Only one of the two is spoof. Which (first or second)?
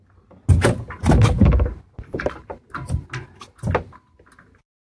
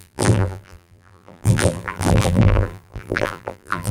second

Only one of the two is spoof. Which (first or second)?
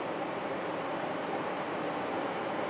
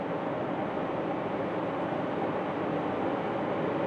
first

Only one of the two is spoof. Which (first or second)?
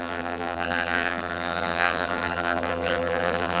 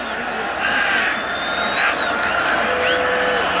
first